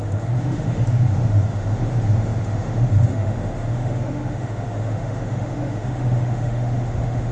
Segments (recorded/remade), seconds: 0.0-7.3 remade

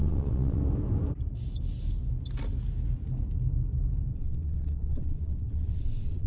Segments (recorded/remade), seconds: 0.0-0.6 remade; 0.6-4.1 recorded; 4.1-6.3 remade

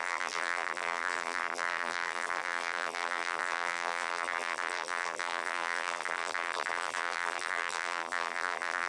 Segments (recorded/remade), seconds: 0.0-8.9 remade

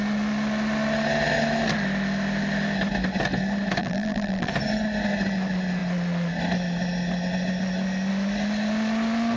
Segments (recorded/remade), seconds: 0.0-3.8 recorded; 3.8-4.5 remade; 4.5-9.4 recorded

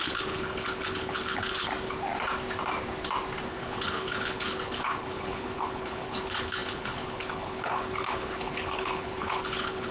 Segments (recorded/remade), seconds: 0.0-1.7 remade; 1.7-3.5 recorded; 3.5-9.9 remade

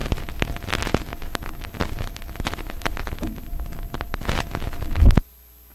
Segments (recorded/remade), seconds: 0.0-5.7 recorded

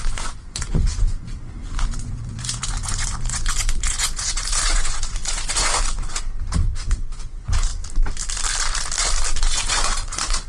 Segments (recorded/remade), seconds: 0.0-7.7 remade; 7.7-9.4 recorded; 9.4-10.5 remade